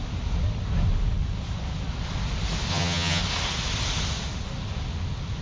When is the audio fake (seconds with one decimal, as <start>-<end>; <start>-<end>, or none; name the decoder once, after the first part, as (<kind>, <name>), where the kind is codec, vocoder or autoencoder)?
2.7-3.2 (vocoder, HiFi-GAN)